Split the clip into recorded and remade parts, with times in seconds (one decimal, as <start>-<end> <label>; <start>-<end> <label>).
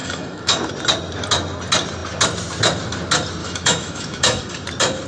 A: 0.0-0.7 remade; 0.7-3.4 recorded; 3.4-4.4 remade; 4.4-5.1 recorded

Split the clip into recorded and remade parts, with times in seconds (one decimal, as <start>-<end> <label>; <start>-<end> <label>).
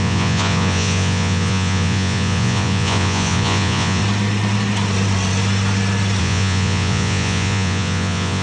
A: 0.0-4.0 remade; 4.0-6.2 recorded; 6.2-8.4 remade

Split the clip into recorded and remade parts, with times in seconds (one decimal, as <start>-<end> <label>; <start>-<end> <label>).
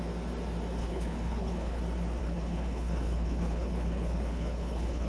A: 0.0-0.8 recorded; 0.8-1.8 remade; 1.8-2.2 recorded; 2.2-5.1 remade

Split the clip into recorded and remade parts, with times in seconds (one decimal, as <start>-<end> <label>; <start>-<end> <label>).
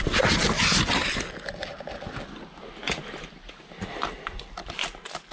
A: 0.0-5.3 recorded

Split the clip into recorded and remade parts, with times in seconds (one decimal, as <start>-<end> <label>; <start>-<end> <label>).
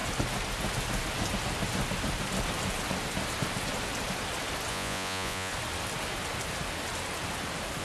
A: 0.0-4.7 recorded; 4.7-5.5 remade; 5.5-7.8 recorded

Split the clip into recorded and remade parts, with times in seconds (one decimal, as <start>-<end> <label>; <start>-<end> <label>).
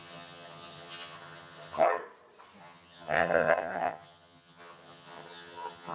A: 0.0-2.0 remade; 2.0-2.6 recorded; 2.6-5.9 remade